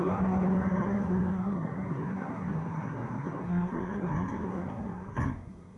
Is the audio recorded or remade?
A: remade